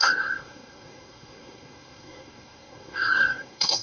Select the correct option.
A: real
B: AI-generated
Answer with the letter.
B